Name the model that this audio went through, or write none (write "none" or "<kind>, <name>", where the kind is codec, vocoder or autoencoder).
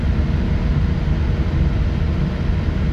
none